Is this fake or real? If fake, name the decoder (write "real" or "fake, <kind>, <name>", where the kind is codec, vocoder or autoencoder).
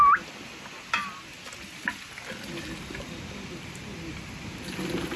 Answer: real